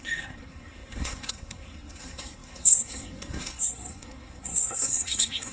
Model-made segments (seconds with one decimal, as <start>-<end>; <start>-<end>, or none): 0.0-5.5